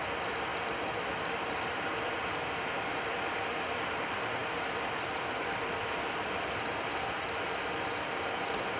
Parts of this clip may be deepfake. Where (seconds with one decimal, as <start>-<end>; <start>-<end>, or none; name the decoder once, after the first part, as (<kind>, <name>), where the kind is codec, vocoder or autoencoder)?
4.4-8.3 (vocoder, BigVGAN v2)